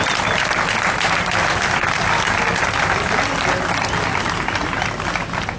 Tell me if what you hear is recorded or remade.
recorded